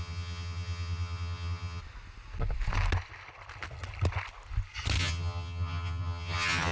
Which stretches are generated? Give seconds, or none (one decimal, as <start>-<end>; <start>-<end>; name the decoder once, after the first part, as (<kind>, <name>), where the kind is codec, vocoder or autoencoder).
0.0-1.8 (vocoder, HiFi-GAN); 5.0-6.7